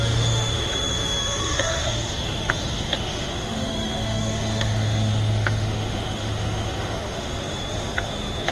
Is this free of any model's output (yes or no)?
no